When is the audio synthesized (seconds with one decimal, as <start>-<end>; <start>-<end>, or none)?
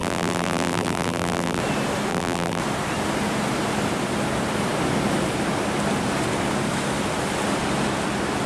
0.0-1.6; 2.1-2.6